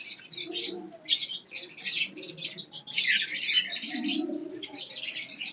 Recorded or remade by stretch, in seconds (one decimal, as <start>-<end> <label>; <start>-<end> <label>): 0.0-4.4 recorded; 4.4-4.9 remade; 4.9-5.5 recorded